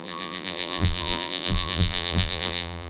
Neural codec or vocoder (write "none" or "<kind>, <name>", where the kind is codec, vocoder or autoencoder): vocoder, BigVGAN v2